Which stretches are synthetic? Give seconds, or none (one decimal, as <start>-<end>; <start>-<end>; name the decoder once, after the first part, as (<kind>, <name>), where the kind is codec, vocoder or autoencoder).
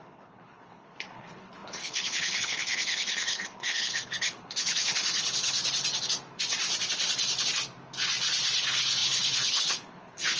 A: 0.0-5.6 (codec, HILCodec); 8.6-10.4